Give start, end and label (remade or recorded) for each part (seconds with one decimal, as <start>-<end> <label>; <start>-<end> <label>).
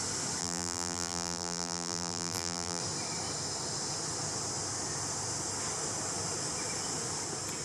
0.0-0.4 recorded; 0.4-2.8 remade; 2.8-7.6 recorded